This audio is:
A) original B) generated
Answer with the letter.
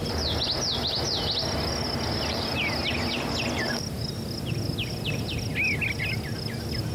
A